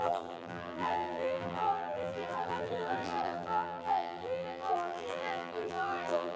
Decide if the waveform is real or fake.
fake